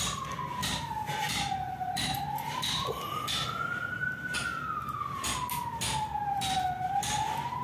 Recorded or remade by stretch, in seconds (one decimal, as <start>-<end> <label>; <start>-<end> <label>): 0.0-0.6 recorded; 0.6-3.2 remade; 3.2-7.6 recorded